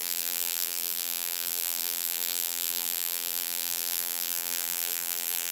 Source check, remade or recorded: remade